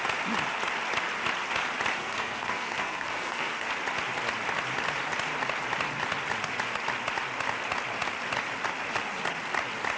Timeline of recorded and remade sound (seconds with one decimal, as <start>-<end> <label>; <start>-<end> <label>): 0.0-2.0 recorded; 2.0-3.7 remade; 3.7-10.0 recorded